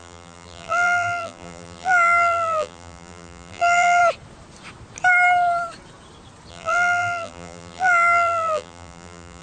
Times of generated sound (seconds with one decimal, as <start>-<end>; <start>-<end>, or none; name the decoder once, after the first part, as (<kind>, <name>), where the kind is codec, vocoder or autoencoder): 0.0-4.0 (vocoder, BigVGAN v2); 6.5-9.4